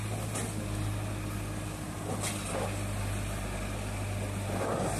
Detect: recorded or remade recorded